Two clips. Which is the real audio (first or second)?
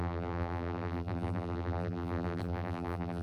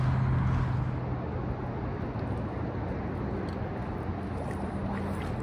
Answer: second